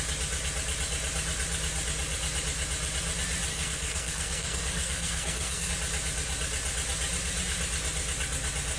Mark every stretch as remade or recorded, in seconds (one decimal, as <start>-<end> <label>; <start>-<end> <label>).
0.0-3.5 recorded; 3.5-5.7 remade; 5.7-8.8 recorded